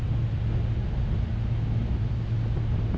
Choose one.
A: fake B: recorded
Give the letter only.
B